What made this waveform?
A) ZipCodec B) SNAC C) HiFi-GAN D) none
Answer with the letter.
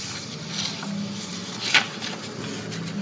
D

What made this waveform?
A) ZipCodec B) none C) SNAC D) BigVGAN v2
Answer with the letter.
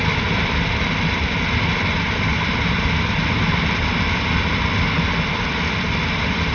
B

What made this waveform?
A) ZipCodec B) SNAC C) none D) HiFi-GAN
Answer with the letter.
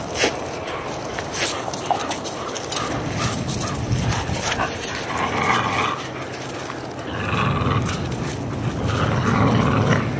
C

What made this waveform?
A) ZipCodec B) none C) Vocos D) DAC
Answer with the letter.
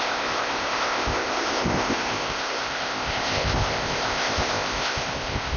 A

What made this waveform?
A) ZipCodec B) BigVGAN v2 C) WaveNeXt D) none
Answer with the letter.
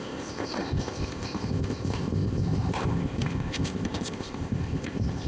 A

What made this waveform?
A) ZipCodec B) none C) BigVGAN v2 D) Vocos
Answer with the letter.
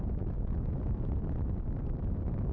B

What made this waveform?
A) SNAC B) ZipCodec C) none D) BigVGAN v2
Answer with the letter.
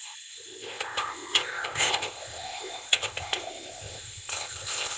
B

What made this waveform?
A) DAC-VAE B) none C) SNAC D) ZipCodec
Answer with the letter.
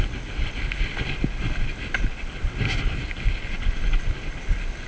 B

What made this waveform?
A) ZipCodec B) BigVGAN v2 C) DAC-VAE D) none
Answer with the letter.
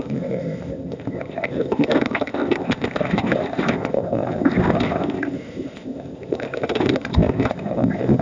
A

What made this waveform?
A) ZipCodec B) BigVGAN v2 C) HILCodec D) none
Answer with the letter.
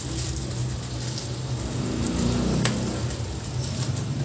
D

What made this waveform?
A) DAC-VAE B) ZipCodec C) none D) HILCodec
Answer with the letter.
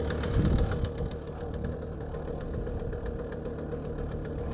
C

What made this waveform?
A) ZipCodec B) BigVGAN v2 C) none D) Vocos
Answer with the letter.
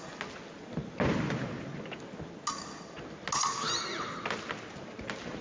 C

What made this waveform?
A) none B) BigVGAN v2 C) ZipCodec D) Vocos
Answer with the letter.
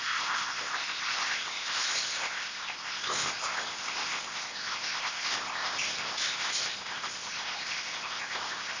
C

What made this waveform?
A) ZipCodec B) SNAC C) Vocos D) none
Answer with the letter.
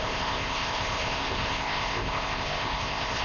A